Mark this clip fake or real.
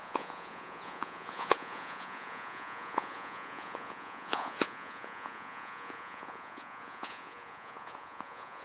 fake